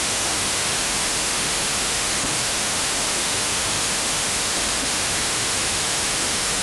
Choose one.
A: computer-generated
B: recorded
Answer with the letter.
A